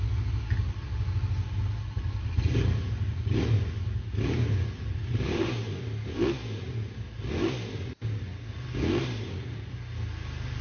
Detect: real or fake real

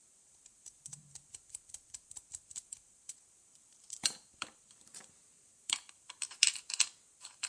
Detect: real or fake fake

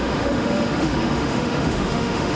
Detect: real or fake fake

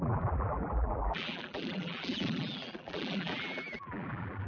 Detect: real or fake fake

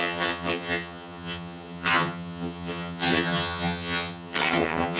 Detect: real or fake fake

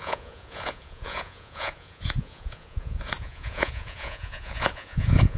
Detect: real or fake fake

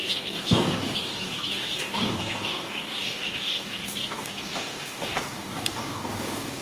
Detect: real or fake fake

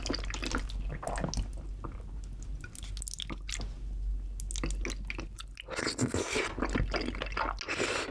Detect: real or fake real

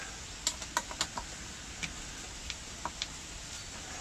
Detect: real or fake real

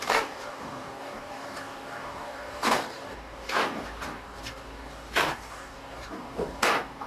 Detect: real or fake fake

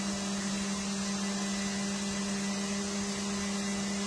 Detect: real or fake real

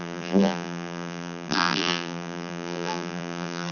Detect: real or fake fake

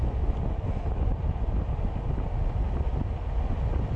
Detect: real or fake real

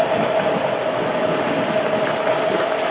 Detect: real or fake real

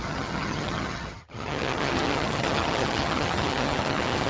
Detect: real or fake fake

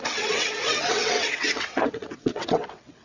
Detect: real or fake fake